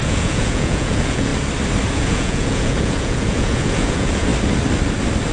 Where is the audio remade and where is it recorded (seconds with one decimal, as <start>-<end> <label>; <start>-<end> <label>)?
0.0-1.3 remade; 1.3-1.9 recorded; 1.9-4.3 remade; 4.3-5.3 recorded